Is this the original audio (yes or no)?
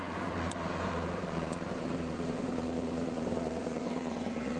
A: no